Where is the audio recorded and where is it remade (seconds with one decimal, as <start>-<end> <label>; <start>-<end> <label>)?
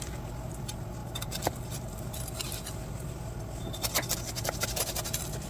0.0-5.5 recorded